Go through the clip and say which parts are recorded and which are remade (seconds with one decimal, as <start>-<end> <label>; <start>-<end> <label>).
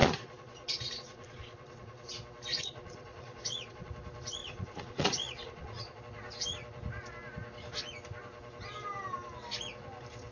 0.0-2.1 remade; 2.1-2.5 recorded; 2.5-3.9 remade; 3.9-4.4 recorded; 4.4-6.0 remade; 6.0-10.3 recorded